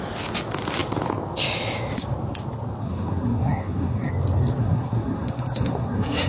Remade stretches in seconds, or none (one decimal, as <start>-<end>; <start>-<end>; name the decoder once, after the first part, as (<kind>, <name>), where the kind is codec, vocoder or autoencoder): 2.8-4.1 (codec, SNAC); 4.6-6.3

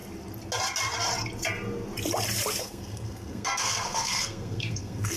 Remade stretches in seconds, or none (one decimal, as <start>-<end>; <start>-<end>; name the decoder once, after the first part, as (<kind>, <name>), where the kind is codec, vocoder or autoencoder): 2.6-5.2 (codec, SNAC)

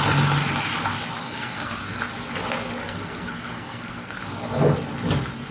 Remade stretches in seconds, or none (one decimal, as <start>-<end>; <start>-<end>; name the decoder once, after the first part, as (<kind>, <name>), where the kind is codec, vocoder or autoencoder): 1.2-2.0 (codec, SNAC); 2.8-4.2

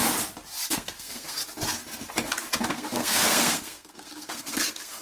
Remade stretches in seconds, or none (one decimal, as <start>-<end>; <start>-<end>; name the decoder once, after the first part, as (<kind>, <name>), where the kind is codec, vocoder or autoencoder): 0.7-1.4 (codec, SNAC); 2.7-5.0

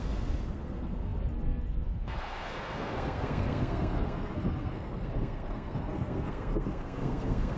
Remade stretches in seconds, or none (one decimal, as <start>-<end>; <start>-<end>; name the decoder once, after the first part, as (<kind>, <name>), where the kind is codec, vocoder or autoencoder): 0.0-7.6 (codec, SNAC)

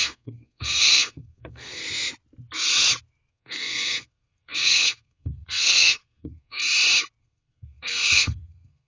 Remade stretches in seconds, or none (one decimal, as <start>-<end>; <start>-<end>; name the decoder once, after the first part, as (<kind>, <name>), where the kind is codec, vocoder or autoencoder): 0.0-1.8 (codec, SNAC); 3.3-6.6; 7.2-8.9

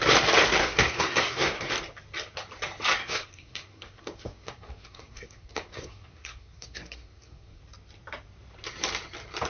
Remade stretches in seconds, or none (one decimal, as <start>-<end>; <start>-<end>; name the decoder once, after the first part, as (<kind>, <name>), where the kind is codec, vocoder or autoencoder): 0.6-1.7 (codec, SNAC); 3.0-7.6